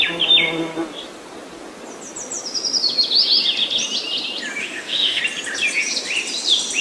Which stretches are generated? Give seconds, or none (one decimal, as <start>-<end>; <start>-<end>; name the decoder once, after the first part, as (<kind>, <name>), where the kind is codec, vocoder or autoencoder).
4.6-5.2 (autoencoder, DAC-VAE)